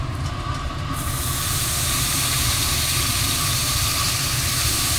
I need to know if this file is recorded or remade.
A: remade